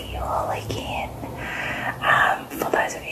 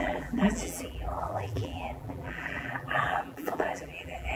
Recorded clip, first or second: first